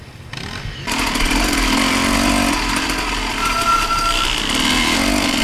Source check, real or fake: real